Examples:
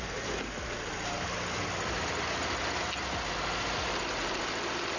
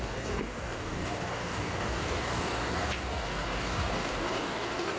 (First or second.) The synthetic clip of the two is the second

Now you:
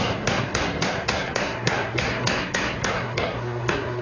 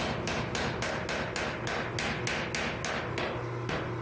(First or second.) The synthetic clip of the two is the first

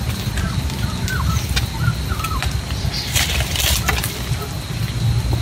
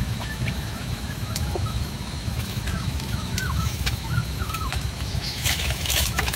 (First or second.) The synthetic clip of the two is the second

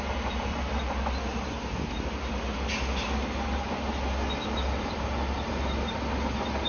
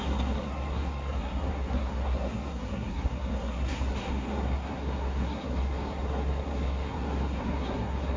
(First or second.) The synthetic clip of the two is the second